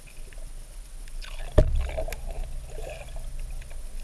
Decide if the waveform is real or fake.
real